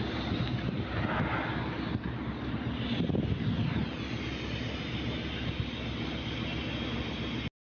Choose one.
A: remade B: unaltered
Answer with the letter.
B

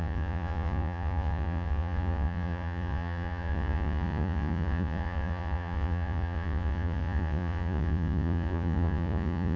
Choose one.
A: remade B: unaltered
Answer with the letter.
A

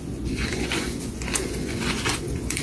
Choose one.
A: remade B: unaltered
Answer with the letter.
A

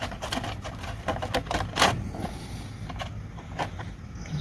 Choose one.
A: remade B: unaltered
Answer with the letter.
B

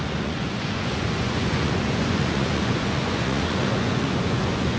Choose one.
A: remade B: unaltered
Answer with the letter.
A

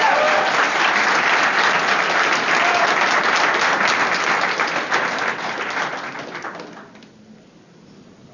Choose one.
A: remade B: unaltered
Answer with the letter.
B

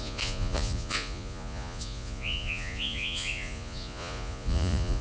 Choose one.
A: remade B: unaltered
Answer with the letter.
A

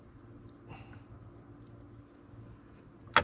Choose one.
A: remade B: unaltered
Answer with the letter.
B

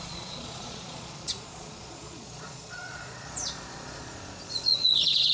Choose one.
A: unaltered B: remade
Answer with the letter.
B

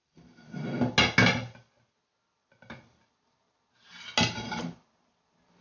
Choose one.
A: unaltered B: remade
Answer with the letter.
A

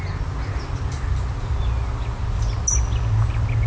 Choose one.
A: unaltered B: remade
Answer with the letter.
A